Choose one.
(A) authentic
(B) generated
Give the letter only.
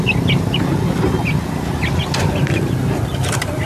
A